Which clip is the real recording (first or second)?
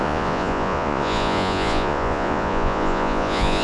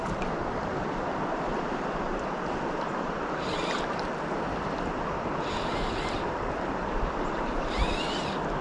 second